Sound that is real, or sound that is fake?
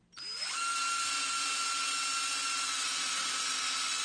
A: real